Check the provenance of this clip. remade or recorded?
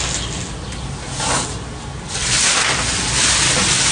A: recorded